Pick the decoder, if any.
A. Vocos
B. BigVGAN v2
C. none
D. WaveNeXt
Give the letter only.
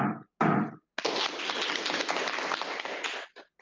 C